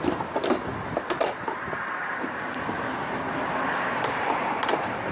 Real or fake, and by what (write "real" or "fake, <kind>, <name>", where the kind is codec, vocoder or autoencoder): fake, vocoder, BigVGAN v2